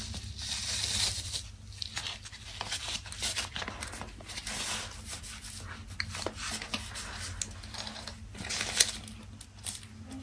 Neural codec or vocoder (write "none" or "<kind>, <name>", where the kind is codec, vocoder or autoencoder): none